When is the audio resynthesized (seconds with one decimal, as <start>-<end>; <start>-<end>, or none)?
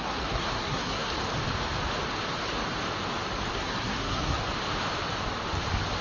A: 0.0-1.1; 3.5-4.4